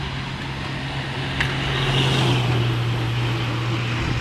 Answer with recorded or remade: recorded